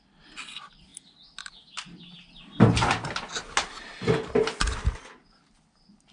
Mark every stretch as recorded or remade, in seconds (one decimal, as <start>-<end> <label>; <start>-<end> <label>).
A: 0.0-6.1 recorded